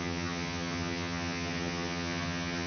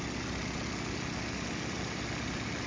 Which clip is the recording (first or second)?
second